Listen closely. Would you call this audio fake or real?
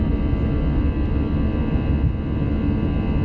real